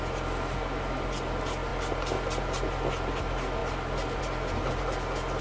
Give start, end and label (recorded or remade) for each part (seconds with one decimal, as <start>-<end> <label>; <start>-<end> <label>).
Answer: 0.0-1.7 remade; 1.7-3.2 recorded; 3.2-5.4 remade